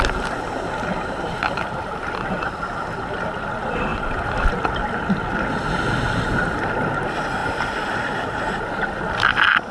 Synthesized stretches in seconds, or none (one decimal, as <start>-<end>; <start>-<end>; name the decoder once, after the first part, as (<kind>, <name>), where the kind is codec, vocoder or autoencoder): 7.4-8.7 (vocoder, BigVGAN v2)